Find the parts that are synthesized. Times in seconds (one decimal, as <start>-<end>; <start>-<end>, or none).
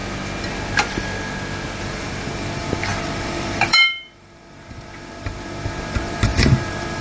1.8-7.0